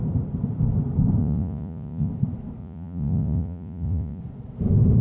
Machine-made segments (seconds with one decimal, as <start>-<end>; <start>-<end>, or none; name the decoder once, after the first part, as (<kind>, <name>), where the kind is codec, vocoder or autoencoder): 1.2-2.1 (vocoder, Vocos); 2.6-4.2